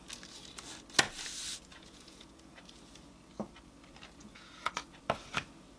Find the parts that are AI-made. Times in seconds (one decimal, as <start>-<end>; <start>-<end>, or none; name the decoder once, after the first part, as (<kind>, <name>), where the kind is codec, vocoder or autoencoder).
1.7-2.6 (vocoder, Vocos); 4.2-4.7

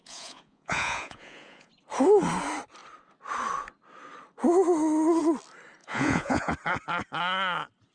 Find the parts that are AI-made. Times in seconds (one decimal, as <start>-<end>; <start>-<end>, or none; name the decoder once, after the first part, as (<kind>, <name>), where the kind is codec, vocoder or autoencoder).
0.0-1.7 (vocoder, Vocos); 5.8-6.5